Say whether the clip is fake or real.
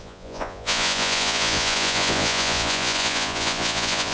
fake